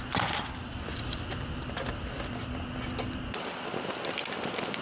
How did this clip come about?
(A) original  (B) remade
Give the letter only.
A